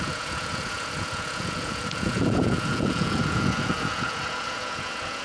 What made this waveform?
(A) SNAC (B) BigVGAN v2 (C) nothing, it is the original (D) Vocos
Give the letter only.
D